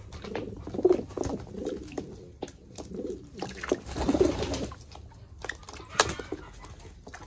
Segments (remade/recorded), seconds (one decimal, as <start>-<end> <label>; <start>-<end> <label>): 0.0-7.3 recorded